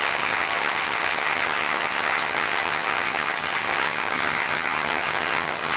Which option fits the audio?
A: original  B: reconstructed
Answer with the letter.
B